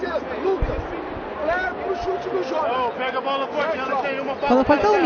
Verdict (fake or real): real